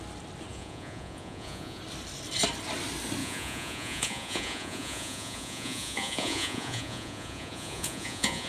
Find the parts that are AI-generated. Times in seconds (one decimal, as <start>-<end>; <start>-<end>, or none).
0.5-1.8; 3.2-8.5